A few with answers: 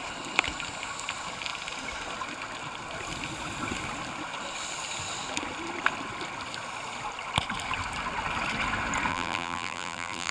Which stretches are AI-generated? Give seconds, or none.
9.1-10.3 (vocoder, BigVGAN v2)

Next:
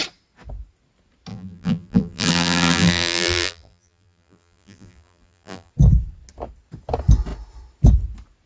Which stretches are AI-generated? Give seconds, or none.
1.3-5.7 (vocoder, BigVGAN v2)

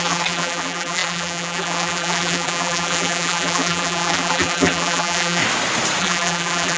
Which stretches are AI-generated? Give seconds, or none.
0.0-5.4 (vocoder, BigVGAN v2); 6.0-6.8

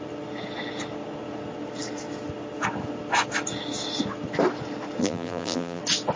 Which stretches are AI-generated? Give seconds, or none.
5.0-5.8 (vocoder, BigVGAN v2)